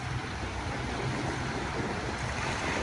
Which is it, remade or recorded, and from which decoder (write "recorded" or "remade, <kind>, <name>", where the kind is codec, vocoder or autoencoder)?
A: recorded